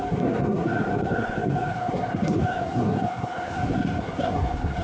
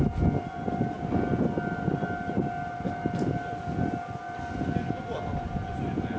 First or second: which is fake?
first